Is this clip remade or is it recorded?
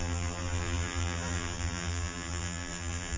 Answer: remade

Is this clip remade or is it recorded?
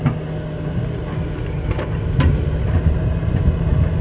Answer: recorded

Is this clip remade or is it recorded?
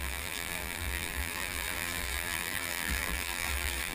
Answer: remade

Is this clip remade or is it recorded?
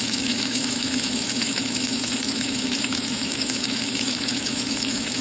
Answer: remade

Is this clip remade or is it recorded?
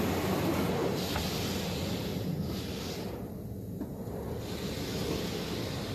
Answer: recorded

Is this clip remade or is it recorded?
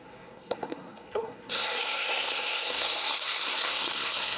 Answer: remade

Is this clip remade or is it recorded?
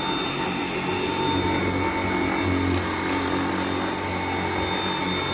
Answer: recorded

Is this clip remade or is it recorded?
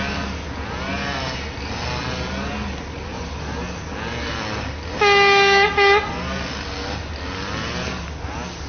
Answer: recorded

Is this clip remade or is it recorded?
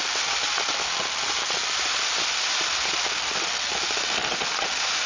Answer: recorded